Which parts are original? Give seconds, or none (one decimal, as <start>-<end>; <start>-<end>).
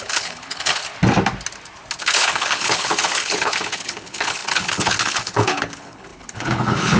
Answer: 0.8-2.0